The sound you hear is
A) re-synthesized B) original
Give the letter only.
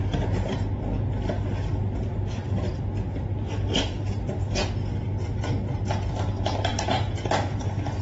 B